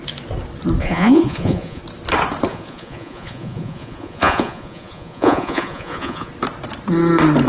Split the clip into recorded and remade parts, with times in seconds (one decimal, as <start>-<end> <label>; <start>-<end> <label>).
0.0-0.8 recorded; 0.8-1.8 remade; 1.8-2.5 recorded; 2.5-6.3 remade; 6.3-7.5 recorded